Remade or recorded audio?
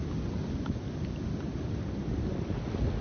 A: recorded